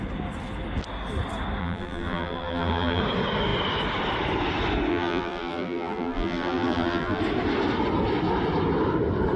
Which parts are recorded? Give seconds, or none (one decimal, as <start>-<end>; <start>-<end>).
0.0-1.6; 3.0-4.9; 7.2-9.4